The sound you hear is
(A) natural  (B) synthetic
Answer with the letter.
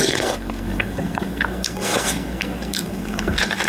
B